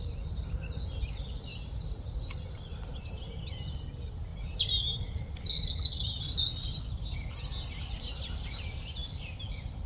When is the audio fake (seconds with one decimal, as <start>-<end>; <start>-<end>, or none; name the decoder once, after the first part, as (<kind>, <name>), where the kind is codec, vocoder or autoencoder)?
1.5-2.5 (vocoder, BigVGAN v2); 4.3-5.4; 9.0-9.9